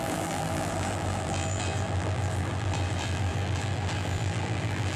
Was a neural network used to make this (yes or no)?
yes